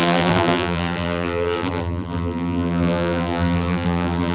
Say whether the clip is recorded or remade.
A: remade